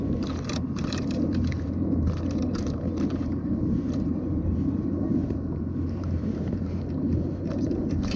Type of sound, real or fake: fake